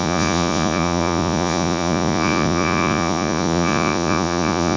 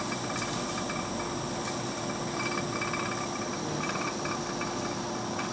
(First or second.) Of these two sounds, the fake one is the first